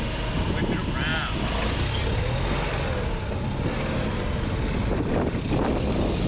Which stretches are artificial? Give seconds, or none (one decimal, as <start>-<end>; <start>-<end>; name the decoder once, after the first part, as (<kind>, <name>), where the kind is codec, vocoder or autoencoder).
none